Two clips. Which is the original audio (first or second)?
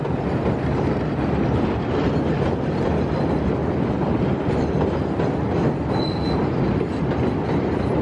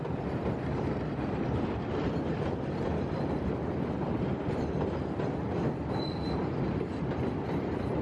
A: first